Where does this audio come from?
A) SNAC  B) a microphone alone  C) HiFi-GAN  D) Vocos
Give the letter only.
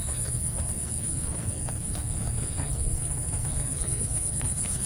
A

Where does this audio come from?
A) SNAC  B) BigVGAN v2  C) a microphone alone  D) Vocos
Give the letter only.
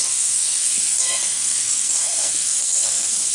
A